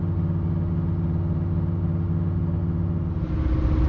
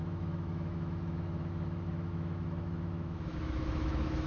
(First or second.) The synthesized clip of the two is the second